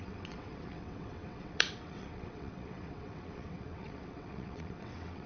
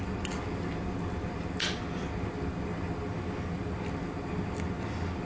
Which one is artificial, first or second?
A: first